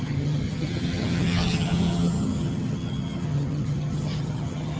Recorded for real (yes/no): no